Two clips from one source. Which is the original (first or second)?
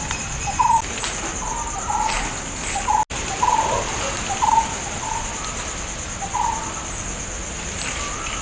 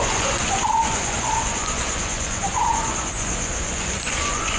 first